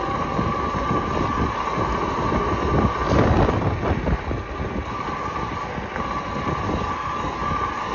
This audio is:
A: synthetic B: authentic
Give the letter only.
B